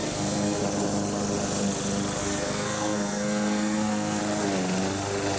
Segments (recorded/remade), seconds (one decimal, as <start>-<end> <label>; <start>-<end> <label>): 0.0-0.6 remade; 0.6-2.2 recorded; 2.2-4.2 remade; 4.2-5.4 recorded